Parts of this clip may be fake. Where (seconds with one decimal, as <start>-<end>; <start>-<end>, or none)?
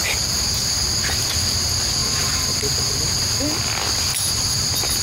none